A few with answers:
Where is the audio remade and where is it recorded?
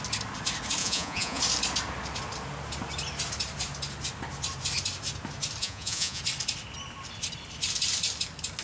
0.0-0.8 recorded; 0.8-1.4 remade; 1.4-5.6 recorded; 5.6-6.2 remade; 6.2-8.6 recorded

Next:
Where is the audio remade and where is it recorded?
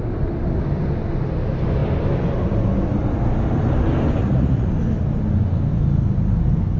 0.0-4.2 recorded; 4.2-4.7 remade; 4.7-6.8 recorded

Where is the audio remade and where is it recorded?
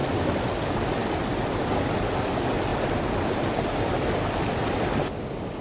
0.0-5.6 recorded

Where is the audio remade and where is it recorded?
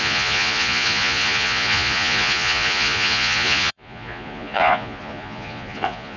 0.0-6.2 remade